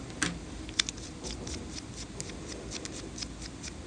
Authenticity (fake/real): real